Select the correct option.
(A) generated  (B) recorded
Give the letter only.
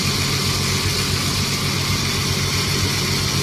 B